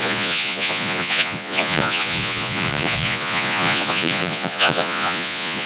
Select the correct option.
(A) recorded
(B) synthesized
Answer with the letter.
B